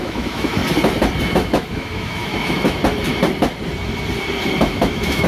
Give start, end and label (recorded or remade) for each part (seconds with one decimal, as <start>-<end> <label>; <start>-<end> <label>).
0.0-0.6 remade; 0.6-1.2 recorded; 1.2-2.8 remade; 2.8-4.6 recorded; 4.6-5.3 remade